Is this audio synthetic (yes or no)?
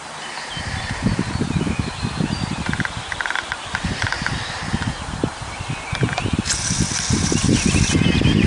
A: no